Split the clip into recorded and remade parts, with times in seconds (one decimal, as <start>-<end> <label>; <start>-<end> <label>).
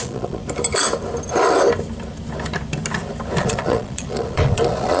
0.0-0.4 remade; 0.4-3.4 recorded; 3.4-5.0 remade